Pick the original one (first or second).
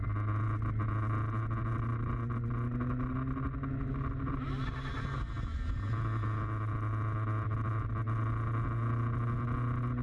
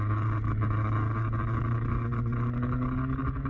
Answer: first